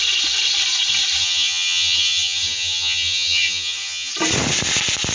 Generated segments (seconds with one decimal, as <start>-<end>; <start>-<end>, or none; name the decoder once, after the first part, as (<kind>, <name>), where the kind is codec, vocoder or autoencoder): 1.2-4.1 (vocoder, HiFi-GAN)

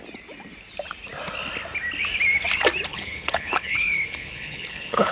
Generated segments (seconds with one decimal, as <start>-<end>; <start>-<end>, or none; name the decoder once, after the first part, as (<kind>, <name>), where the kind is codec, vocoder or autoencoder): 2.9-5.1 (codec, HILCodec)

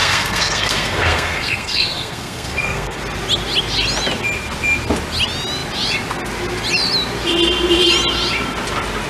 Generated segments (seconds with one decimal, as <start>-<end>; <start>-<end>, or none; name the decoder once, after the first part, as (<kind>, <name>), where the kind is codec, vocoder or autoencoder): 0.0-3.0 (codec, SNAC)

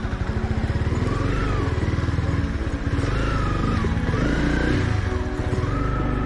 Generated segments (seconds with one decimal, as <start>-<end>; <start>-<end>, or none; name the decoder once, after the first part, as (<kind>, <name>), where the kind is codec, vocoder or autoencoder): none